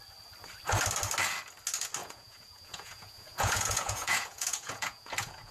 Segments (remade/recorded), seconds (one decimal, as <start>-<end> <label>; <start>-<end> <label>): 0.0-2.0 recorded; 2.0-5.5 remade